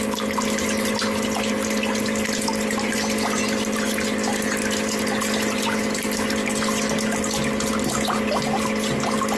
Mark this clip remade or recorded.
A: recorded